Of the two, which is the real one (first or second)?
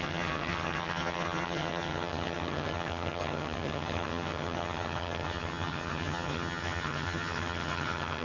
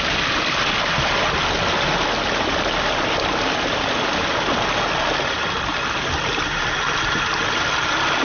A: second